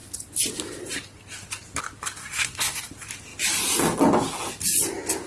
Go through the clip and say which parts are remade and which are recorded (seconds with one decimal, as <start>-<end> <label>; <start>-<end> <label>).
0.0-2.2 recorded; 2.2-2.8 remade; 2.8-5.3 recorded